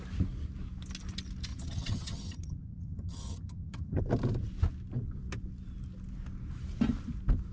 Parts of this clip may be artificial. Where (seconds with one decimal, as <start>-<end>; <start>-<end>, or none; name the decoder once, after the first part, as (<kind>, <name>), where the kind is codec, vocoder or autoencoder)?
1.5-4.0 (vocoder, HiFi-GAN)